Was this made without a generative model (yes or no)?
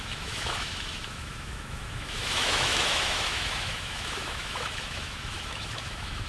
no